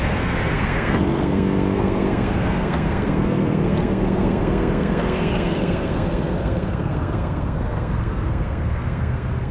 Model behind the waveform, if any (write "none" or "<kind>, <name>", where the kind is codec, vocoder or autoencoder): codec, SNAC